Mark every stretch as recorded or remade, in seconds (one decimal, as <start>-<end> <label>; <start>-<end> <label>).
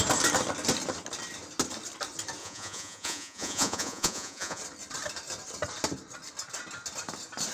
0.0-2.4 recorded; 2.4-4.6 remade; 4.6-7.5 recorded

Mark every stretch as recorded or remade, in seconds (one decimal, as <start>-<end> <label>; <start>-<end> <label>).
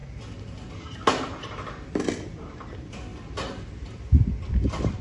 0.0-5.0 recorded